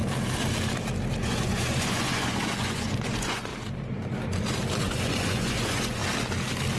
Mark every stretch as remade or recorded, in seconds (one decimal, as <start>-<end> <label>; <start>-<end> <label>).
0.0-1.2 recorded; 1.2-3.5 remade; 3.5-4.8 recorded; 4.8-6.0 remade; 6.0-6.8 recorded

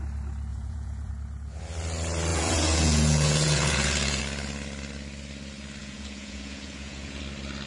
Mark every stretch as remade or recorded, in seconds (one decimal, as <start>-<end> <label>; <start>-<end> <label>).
0.0-0.5 recorded; 0.5-1.1 remade; 1.1-2.3 recorded; 2.3-4.2 remade; 4.2-5.8 recorded; 5.8-7.2 remade; 7.2-7.7 recorded

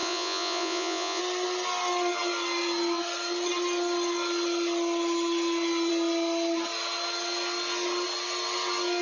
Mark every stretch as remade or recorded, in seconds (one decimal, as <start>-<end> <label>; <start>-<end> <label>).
0.0-1.2 remade; 1.2-9.0 recorded

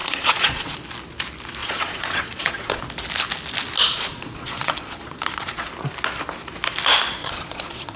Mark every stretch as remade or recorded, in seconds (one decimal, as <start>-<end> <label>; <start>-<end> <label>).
0.0-0.8 remade; 0.8-1.6 recorded; 1.6-2.8 remade; 2.8-3.9 recorded; 3.9-5.7 remade; 5.7-7.2 recorded; 7.2-8.0 remade